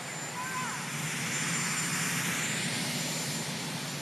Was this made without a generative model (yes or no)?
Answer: yes